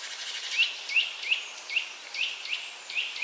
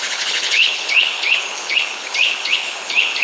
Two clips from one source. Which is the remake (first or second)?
second